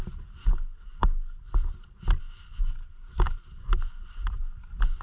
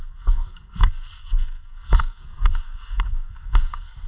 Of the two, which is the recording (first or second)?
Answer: first